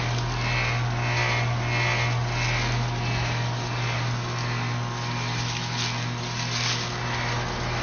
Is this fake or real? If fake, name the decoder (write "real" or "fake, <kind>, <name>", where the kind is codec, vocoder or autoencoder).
real